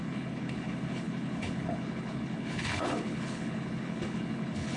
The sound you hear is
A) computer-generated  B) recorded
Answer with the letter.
A